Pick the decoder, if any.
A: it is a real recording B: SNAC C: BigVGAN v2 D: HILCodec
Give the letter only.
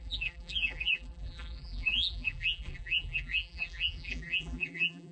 C